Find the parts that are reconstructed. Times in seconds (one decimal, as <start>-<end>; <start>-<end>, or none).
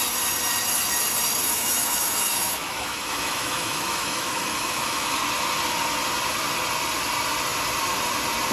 1.4-5.2